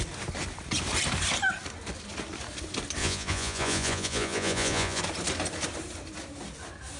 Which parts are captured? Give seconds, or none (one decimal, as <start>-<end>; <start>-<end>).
0.0-3.0; 5.0-7.0